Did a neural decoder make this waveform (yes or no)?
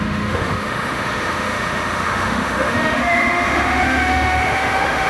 yes